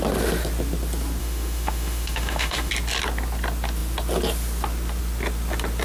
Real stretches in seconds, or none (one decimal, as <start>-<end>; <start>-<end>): 0.0-1.2; 2.7-5.8